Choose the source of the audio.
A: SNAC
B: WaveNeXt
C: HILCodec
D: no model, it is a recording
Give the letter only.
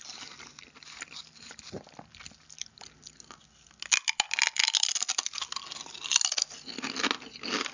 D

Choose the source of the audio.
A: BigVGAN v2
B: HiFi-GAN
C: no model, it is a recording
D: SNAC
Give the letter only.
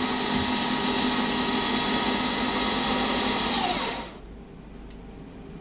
C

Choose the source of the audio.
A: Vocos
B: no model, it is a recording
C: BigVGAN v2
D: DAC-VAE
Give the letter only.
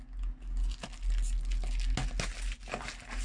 B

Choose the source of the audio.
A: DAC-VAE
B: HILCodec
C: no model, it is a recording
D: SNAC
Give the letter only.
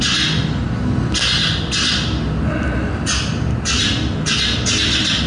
C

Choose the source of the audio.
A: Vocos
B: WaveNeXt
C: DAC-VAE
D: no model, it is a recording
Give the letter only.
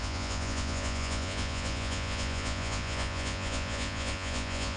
A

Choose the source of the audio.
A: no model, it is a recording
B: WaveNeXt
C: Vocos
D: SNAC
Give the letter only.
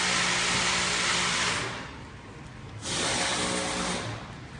A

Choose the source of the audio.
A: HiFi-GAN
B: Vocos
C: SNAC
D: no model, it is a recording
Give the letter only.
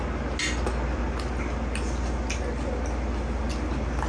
D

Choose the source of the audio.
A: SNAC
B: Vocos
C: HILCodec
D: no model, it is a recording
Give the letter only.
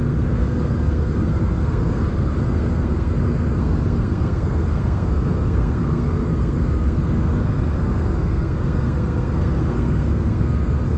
A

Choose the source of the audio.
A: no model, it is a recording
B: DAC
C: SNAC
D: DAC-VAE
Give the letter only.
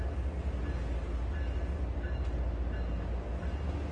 A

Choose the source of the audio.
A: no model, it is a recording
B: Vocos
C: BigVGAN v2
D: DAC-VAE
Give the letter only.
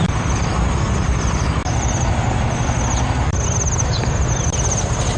A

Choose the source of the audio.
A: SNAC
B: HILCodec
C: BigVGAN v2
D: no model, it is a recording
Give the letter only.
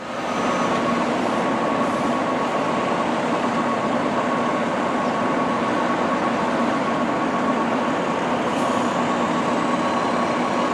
D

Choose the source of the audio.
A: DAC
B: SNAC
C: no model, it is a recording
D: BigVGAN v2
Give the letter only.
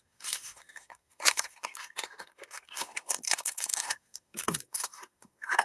B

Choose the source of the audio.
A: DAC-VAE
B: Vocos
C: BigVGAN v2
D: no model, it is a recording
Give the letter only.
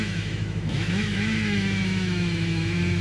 A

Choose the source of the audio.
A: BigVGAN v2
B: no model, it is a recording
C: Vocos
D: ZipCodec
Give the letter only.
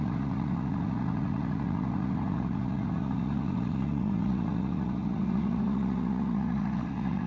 C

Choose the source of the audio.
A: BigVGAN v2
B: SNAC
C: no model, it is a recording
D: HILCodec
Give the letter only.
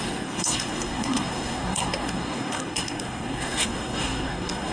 B